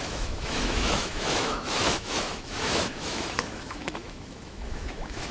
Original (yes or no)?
no